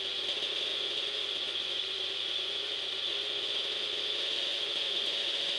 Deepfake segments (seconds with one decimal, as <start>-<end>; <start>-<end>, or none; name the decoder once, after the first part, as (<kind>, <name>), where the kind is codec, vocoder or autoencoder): 0.7-3.7 (vocoder, Vocos); 4.5-5.6